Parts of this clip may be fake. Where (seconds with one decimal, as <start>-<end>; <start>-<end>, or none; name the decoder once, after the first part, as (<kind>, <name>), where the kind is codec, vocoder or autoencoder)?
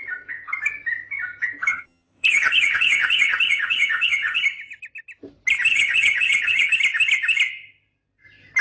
1.7-4.4 (vocoder, HiFi-GAN); 5.7-6.7